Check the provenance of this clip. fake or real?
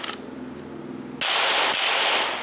real